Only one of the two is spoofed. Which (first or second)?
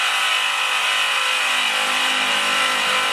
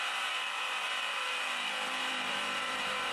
second